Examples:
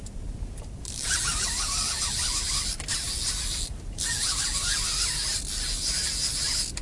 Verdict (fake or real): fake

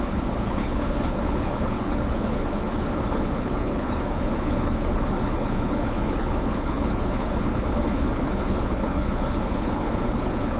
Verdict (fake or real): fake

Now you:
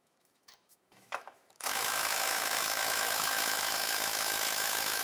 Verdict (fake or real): fake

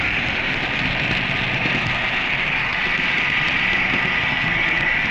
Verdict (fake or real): real